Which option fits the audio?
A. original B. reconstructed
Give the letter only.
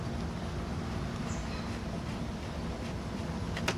A